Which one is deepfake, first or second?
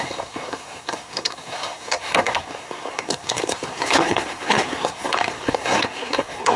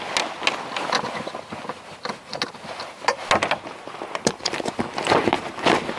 first